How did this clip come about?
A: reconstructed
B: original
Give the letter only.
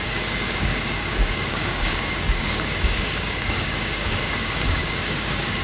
A